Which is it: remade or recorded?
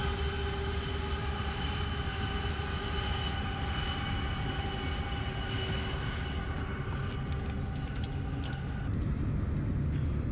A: recorded